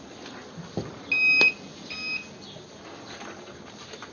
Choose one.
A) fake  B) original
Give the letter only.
B